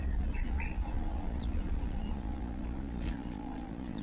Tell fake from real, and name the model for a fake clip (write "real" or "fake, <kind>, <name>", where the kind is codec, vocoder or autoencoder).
fake, vocoder, Vocos